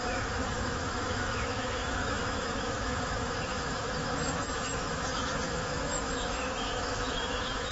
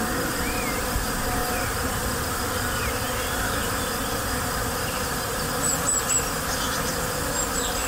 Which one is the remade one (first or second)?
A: first